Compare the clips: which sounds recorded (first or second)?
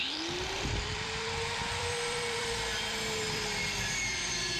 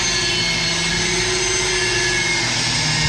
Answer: second